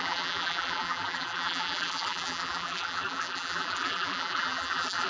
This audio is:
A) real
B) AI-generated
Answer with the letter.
B